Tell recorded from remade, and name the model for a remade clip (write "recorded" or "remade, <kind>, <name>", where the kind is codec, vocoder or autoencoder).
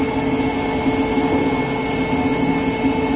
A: recorded